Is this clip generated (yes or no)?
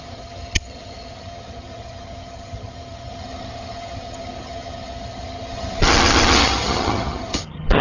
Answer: yes